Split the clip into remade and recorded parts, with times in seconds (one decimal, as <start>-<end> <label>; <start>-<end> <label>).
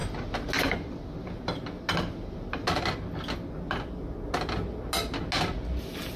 0.0-6.2 recorded